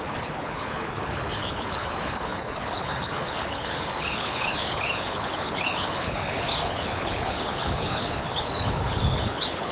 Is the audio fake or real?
fake